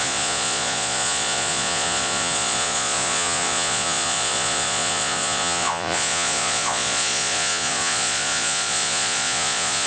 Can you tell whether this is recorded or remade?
remade